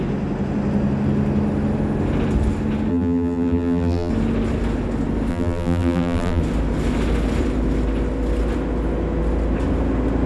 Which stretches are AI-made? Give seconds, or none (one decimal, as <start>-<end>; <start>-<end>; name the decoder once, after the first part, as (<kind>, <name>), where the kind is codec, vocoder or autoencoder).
2.9-4.1 (vocoder, BigVGAN v2); 5.3-6.4